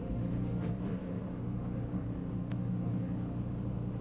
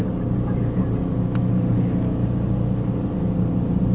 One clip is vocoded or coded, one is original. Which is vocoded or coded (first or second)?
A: first